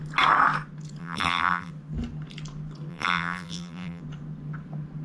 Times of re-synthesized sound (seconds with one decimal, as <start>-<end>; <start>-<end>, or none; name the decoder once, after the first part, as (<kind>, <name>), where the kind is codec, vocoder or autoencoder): 1.0-1.7 (vocoder, BigVGAN v2); 2.9-4.0